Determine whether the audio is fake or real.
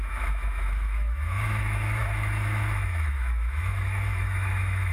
fake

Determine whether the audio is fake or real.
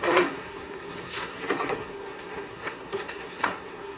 fake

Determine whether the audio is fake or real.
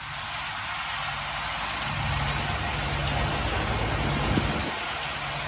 real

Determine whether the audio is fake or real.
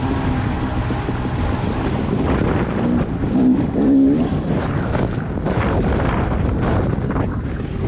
real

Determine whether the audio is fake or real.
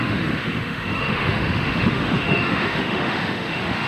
fake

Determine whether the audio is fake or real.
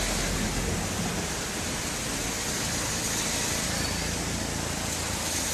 real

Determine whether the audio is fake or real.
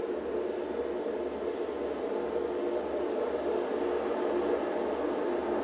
real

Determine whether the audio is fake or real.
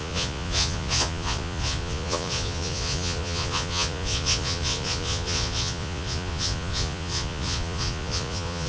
fake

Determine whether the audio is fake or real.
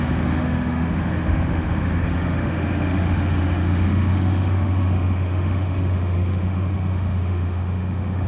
fake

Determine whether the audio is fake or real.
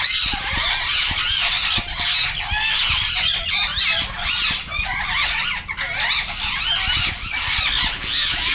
real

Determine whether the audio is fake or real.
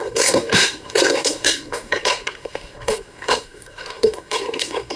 fake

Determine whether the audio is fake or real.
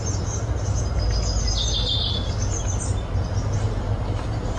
real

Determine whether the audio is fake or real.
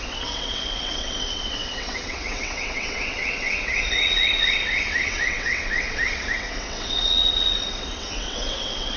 fake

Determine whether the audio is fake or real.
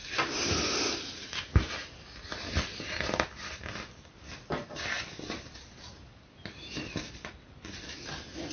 real